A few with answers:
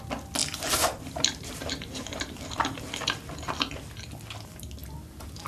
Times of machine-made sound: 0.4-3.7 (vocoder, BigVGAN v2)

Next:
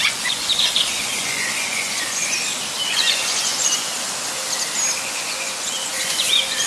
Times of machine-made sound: 0.0-2.2 (vocoder, Vocos); 2.9-3.9; 5.0-6.7

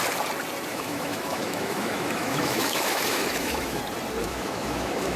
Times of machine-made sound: 0.7-3.8 (autoencoder, DAC-VAE); 4.2-5.2

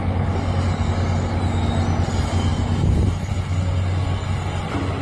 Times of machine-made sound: none

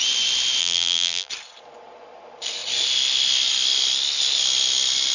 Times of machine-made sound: 0.6-1.3 (vocoder, BigVGAN v2)

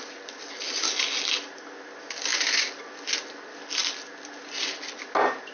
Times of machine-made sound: 3.8-4.6 (vocoder, BigVGAN v2)